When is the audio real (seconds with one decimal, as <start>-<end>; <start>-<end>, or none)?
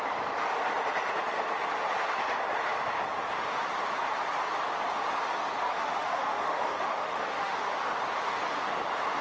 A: 0.0-5.8; 7.9-9.2